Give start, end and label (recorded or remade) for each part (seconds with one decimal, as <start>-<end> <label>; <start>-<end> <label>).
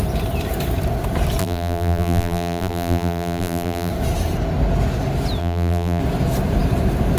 0.0-1.4 recorded; 1.4-3.9 remade; 3.9-5.4 recorded; 5.4-6.0 remade; 6.0-7.2 recorded